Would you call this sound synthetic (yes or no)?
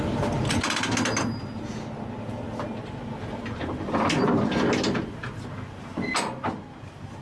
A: no